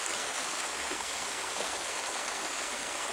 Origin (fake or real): fake